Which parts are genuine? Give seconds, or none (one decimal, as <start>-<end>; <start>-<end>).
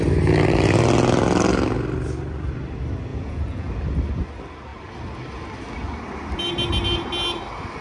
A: 0.0-3.1; 3.7-7.8